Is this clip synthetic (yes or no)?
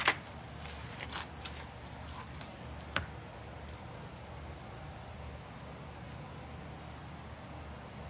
no